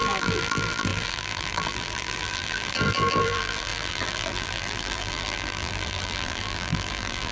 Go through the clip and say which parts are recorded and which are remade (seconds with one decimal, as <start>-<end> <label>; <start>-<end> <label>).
0.0-7.3 remade